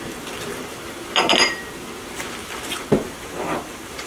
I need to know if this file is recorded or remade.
remade